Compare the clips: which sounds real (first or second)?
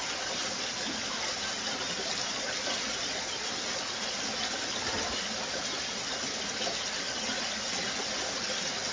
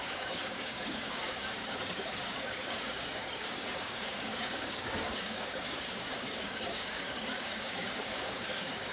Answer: first